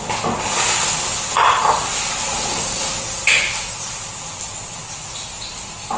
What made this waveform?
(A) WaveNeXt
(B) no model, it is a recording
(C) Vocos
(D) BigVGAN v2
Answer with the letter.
B